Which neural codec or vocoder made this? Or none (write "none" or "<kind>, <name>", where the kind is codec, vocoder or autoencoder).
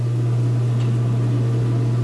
none